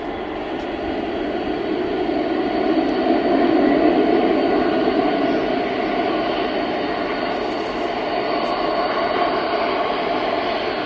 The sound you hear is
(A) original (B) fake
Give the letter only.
A